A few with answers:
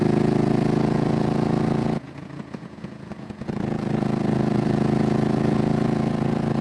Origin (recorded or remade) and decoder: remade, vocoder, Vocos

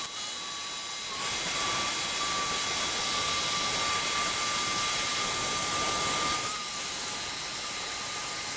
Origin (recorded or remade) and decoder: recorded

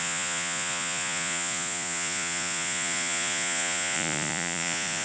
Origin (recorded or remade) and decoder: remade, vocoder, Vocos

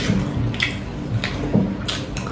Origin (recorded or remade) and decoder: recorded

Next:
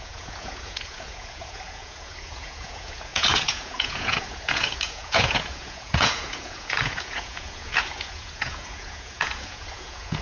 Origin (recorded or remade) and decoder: remade, vocoder, Vocos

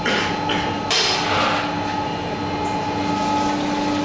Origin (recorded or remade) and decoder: recorded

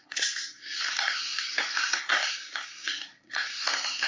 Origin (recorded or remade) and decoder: remade, codec, SNAC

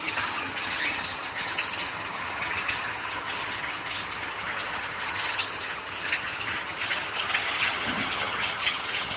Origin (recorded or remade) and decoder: remade, vocoder, HiFi-GAN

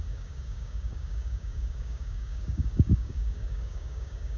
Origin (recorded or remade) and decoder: remade, codec, DAC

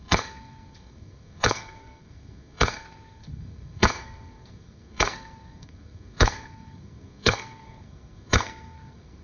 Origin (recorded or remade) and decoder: remade, codec, SNAC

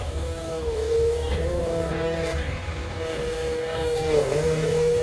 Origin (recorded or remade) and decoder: remade, codec, DAC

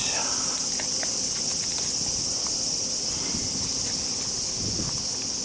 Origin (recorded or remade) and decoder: recorded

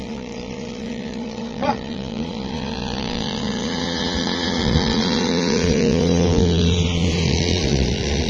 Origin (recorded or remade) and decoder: remade, vocoder, Vocos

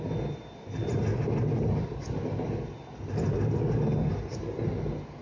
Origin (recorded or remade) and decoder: recorded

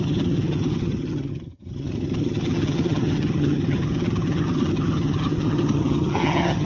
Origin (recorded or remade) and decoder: remade, vocoder, HiFi-GAN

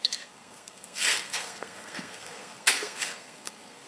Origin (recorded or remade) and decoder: remade, codec, SNAC